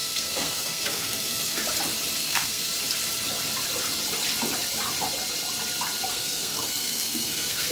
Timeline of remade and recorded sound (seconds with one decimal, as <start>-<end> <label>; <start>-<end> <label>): 0.0-1.6 remade; 1.6-2.2 recorded; 2.2-2.7 remade; 2.7-6.1 recorded; 6.1-7.7 remade